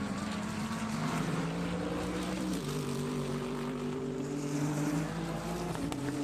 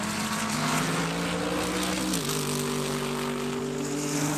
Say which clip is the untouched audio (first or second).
second